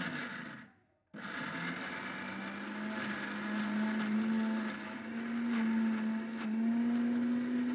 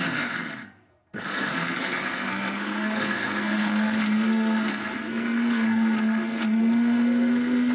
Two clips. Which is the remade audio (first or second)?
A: second